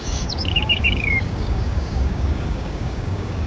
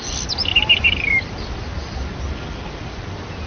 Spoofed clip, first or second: first